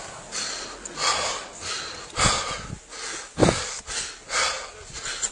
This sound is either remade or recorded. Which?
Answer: recorded